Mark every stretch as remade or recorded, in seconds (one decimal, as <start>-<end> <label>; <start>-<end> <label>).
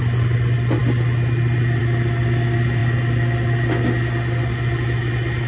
0.0-5.5 recorded